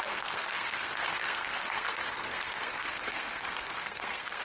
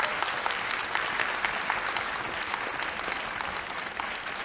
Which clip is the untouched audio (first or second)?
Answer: second